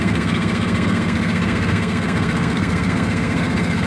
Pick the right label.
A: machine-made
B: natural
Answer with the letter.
A